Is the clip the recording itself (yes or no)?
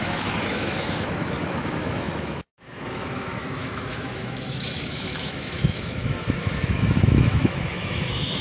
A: no